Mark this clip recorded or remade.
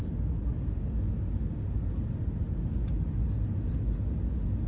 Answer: recorded